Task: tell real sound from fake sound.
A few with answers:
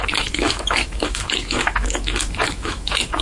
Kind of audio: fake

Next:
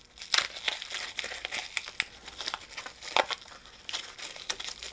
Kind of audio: real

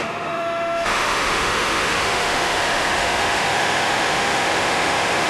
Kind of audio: fake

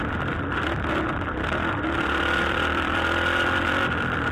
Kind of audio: fake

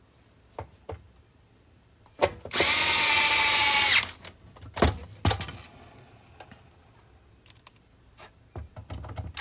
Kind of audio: real